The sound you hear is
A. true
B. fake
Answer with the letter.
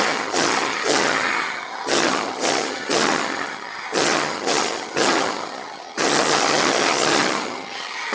B